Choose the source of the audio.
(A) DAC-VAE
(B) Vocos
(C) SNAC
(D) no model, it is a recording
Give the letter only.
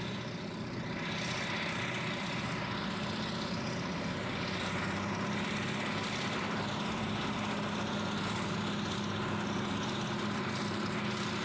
D